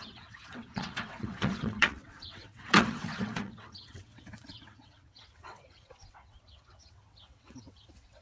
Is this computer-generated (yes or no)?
yes